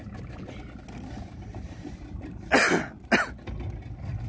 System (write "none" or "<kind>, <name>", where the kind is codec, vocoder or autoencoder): none